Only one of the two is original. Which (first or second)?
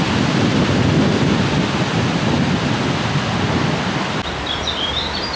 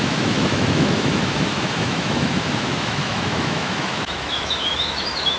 first